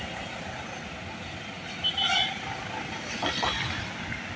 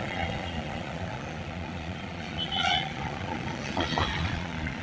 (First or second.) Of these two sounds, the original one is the first